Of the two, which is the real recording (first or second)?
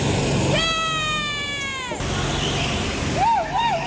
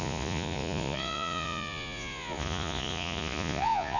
first